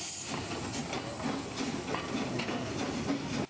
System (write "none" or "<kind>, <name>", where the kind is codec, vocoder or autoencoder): none